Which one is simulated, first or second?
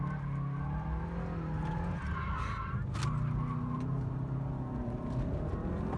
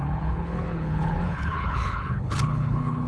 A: second